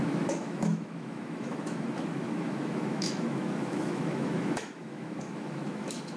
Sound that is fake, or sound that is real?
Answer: fake